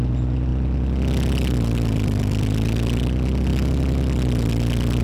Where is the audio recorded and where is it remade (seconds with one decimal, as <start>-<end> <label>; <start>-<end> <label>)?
0.0-5.0 recorded